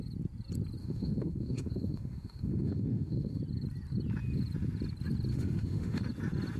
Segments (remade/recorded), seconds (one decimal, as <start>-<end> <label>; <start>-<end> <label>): 0.0-0.8 recorded; 0.8-3.4 remade; 3.4-5.3 recorded; 5.3-6.0 remade; 6.0-6.6 recorded